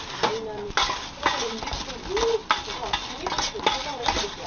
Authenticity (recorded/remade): recorded